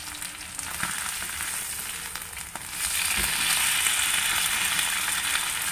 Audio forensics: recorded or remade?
recorded